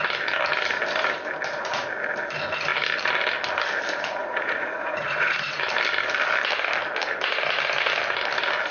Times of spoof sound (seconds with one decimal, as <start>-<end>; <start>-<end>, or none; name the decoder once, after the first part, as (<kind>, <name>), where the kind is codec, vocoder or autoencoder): 4.2-5.6 (vocoder, Vocos)